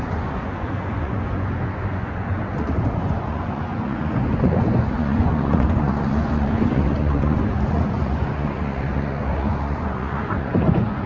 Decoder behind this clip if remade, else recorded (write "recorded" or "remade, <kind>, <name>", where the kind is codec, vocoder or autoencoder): remade, vocoder, Vocos